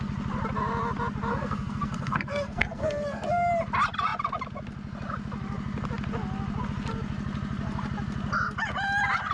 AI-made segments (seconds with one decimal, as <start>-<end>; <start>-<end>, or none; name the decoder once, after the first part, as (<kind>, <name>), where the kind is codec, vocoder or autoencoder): 1.3-3.5 (codec, SNAC)